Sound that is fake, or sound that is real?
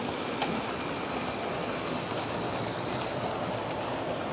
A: real